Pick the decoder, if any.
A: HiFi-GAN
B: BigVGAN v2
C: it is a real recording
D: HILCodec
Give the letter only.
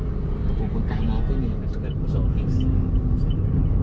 C